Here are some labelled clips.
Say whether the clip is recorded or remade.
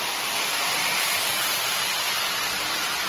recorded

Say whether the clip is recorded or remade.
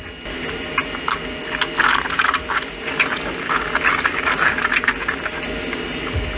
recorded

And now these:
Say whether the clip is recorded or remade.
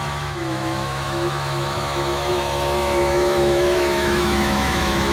remade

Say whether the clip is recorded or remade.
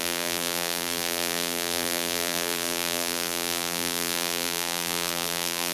remade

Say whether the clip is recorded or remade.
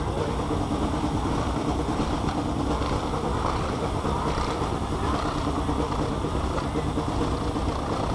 remade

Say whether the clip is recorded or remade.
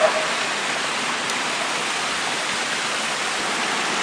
recorded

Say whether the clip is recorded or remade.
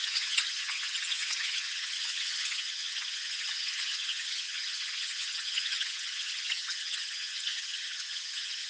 remade